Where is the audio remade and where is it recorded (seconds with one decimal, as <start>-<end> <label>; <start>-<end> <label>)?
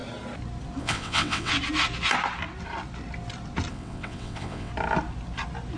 0.0-0.8 recorded; 0.8-1.5 remade; 1.5-3.7 recorded; 3.7-4.7 remade; 4.7-5.8 recorded